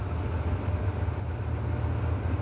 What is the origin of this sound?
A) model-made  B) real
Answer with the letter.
B